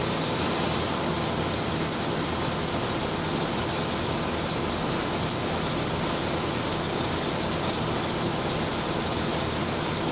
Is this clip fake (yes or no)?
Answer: no